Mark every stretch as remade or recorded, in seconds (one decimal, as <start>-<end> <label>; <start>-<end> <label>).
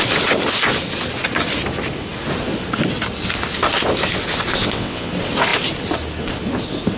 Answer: 0.0-4.6 recorded; 4.6-5.1 remade; 5.1-7.0 recorded